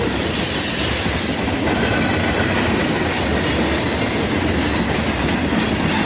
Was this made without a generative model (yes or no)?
yes